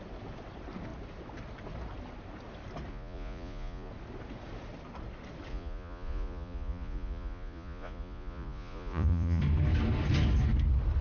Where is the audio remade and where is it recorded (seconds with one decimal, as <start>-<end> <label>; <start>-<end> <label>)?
0.0-2.9 recorded; 2.9-3.9 remade; 3.9-5.5 recorded; 5.5-9.4 remade; 9.4-11.0 recorded